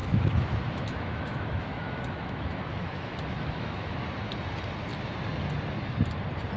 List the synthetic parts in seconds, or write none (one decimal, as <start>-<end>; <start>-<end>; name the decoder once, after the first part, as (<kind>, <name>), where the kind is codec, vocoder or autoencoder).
0.0-4.0 (autoencoder, DAC-VAE)